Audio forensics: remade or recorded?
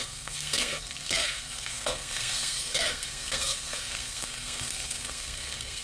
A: remade